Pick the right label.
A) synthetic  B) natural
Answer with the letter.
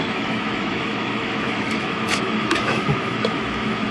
A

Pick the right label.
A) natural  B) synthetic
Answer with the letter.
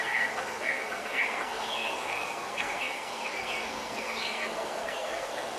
B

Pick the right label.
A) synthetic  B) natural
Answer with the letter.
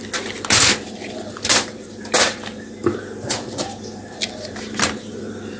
B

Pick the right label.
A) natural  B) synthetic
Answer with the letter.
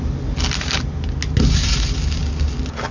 A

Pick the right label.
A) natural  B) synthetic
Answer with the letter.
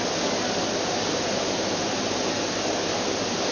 A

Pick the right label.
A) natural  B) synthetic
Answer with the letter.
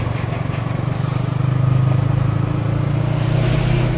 A